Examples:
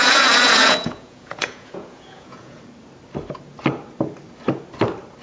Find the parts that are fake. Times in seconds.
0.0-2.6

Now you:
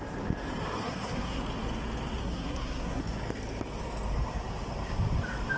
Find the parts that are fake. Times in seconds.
0.8-1.4; 2.2-3.0

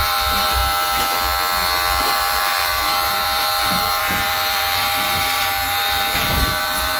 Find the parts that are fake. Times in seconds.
0.0-0.6; 2.0-7.0

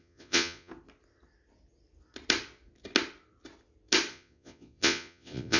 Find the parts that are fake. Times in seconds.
0.0-0.7; 4.1-5.6

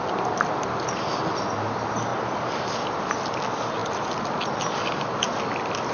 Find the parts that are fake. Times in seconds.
none

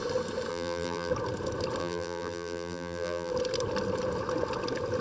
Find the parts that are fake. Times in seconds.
0.5-1.1; 1.8-3.3